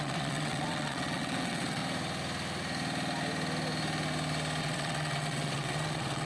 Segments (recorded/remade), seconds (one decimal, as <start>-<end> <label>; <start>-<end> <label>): 0.0-1.8 remade; 1.8-4.6 recorded; 4.6-6.3 remade